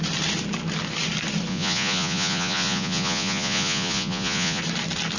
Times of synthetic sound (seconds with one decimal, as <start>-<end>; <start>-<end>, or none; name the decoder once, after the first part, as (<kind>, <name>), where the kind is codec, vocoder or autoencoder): 1.5-4.6 (vocoder, Vocos)